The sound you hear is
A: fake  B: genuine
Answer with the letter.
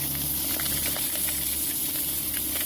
B